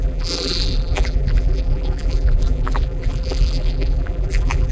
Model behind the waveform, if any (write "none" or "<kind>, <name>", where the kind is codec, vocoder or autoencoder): vocoder, BigVGAN v2